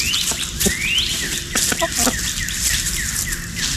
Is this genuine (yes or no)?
yes